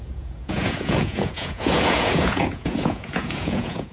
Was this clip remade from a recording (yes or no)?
yes